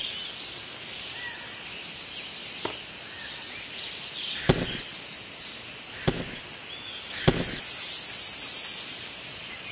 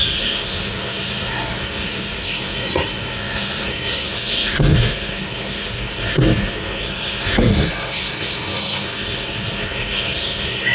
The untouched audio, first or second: first